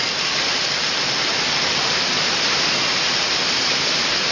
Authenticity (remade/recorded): recorded